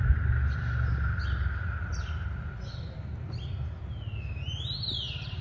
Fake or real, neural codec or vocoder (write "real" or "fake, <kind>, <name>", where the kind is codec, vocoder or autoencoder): real